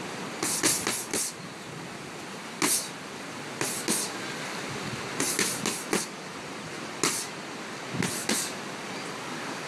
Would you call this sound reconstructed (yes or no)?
no